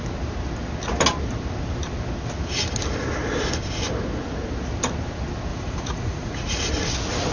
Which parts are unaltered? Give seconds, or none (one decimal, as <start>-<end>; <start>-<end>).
0.0-5.5; 6.7-7.3